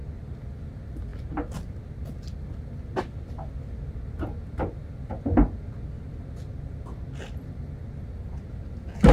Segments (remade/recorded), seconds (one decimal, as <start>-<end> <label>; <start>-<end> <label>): 0.0-9.1 recorded